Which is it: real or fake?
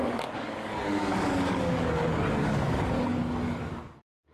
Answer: fake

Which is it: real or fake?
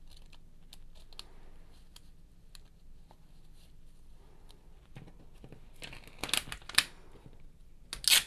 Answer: real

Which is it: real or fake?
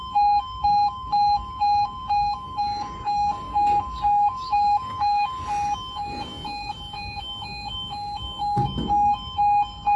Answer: fake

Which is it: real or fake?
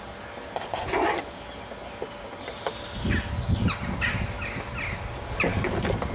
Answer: real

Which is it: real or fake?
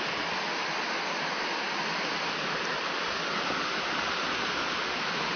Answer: real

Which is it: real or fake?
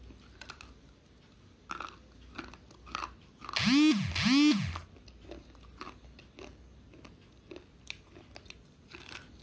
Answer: real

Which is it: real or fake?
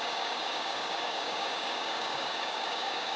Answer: fake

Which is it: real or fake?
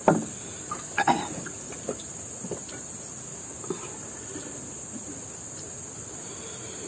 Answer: real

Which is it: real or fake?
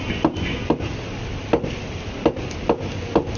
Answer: real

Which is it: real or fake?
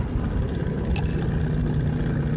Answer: real